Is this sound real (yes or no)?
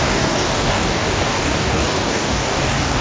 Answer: no